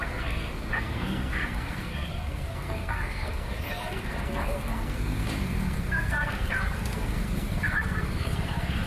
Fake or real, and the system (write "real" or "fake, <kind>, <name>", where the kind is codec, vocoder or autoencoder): fake, codec, SNAC